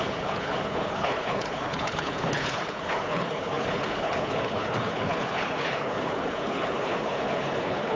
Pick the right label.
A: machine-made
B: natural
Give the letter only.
A